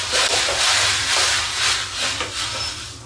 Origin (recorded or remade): recorded